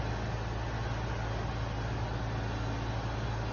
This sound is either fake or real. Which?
real